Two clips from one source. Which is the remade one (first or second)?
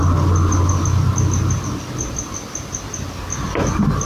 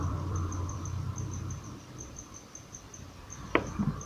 second